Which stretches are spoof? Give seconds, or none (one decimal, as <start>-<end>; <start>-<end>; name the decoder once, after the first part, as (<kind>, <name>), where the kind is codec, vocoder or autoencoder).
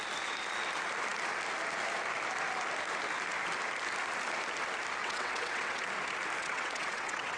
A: 5.0-5.8 (vocoder, WaveNeXt); 6.4-7.4